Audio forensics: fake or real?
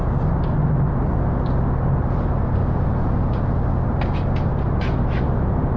real